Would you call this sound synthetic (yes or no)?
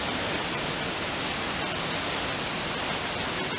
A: no